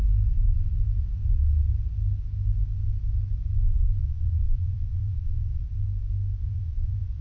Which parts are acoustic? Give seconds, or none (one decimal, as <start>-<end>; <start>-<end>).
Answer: 0.0-4.0; 5.6-6.4